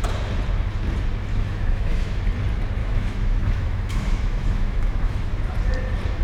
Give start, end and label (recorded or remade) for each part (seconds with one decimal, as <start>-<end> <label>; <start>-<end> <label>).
0.0-1.3 recorded; 1.3-2.2 remade; 2.2-2.8 recorded; 2.8-5.3 remade; 5.3-6.2 recorded